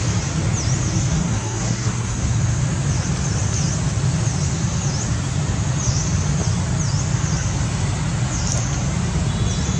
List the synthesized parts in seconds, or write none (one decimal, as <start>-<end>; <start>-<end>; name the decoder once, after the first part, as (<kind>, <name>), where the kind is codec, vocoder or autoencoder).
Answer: 1.1-2.4 (codec, SNAC)